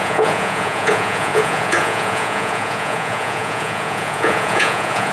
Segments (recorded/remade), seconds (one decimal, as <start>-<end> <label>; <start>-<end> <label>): 0.0-5.1 remade